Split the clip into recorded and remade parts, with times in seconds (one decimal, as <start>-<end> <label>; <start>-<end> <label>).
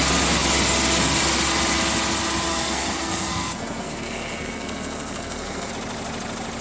0.0-2.5 recorded; 2.5-5.7 remade; 5.7-6.6 recorded